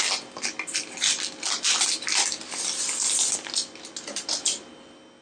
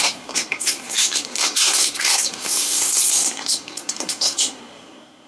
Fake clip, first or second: second